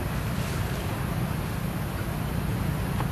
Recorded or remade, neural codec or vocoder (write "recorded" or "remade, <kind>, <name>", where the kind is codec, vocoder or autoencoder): recorded